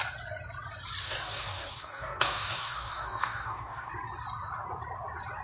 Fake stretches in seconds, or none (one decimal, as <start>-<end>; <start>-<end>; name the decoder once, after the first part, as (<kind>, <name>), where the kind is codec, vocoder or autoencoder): 1.0-3.9 (codec, DAC)